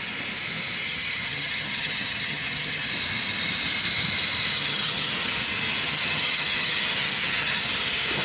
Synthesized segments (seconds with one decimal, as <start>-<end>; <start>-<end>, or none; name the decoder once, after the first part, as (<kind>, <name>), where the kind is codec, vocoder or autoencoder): 0.8-2.9 (vocoder, HiFi-GAN); 4.5-5.3; 5.8-7.6